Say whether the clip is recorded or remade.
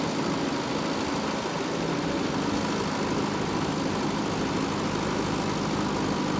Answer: recorded